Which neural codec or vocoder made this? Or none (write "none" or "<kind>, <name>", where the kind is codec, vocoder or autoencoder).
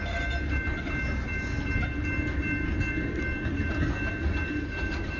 none